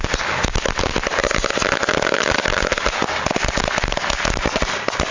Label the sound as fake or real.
real